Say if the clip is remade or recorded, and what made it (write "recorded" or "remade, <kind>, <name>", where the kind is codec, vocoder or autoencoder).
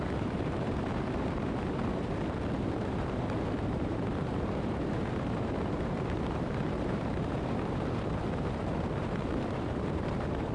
remade, vocoder, BigVGAN v2